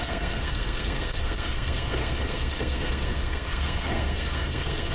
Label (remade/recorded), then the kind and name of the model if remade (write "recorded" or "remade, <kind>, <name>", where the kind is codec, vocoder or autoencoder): remade, codec, SNAC